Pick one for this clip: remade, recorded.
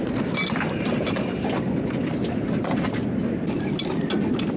recorded